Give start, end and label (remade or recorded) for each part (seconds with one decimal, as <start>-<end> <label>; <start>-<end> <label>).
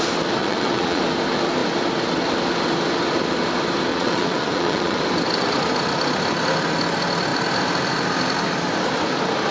0.0-0.4 recorded; 0.4-1.0 remade; 1.0-3.9 recorded; 3.9-5.0 remade; 5.0-9.5 recorded